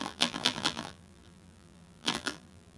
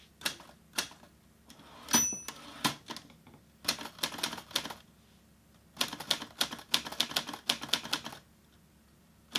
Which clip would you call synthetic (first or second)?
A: first